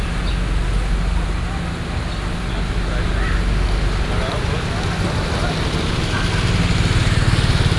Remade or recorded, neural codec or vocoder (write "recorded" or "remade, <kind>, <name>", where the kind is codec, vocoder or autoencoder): recorded